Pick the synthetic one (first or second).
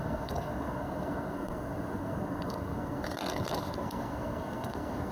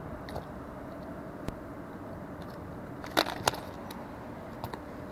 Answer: first